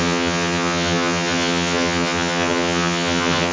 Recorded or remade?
remade